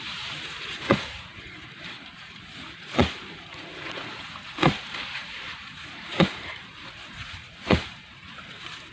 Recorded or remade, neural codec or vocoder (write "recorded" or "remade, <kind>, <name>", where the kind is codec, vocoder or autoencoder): remade, vocoder, Vocos